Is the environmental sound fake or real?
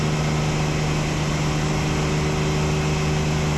real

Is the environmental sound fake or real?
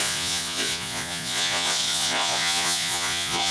fake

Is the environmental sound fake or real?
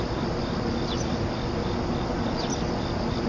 real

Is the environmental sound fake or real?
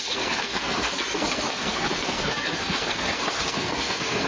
fake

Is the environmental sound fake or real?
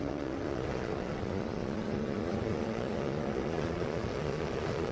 fake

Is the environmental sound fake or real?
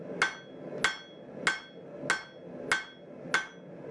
real